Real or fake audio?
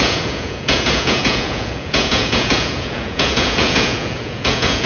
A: fake